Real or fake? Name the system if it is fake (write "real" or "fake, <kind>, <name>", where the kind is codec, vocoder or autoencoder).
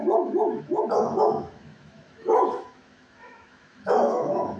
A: fake, autoencoder, DAC-VAE